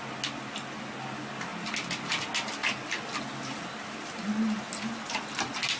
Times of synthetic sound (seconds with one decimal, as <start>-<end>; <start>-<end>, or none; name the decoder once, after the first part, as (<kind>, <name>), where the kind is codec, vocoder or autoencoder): none